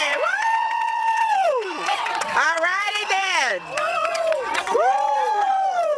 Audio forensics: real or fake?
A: fake